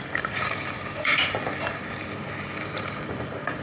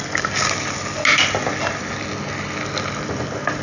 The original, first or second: second